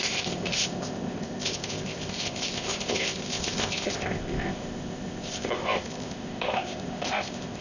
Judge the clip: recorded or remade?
remade